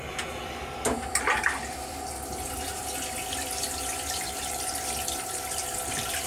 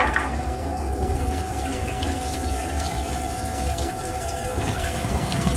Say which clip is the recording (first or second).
first